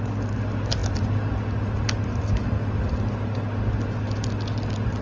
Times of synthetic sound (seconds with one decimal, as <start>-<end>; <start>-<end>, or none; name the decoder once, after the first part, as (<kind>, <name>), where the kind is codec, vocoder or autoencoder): none